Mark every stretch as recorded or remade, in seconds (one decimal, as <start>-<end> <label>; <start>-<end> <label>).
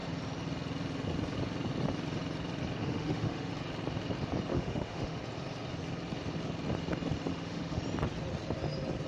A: 0.0-2.8 recorded; 2.8-3.5 remade; 3.5-4.5 recorded; 4.5-5.2 remade; 5.2-7.3 recorded; 7.3-7.8 remade; 7.8-9.1 recorded